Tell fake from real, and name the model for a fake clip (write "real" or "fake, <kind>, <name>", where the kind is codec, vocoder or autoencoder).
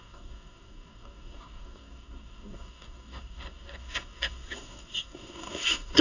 fake, codec, DAC